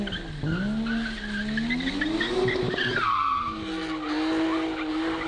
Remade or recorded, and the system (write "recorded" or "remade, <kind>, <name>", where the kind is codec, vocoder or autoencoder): recorded